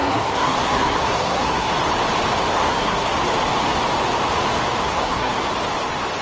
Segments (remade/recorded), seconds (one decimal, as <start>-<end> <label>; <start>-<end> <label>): 0.0-1.7 remade; 1.7-2.5 recorded; 2.5-3.1 remade; 3.1-4.8 recorded; 4.8-5.4 remade; 5.4-6.2 recorded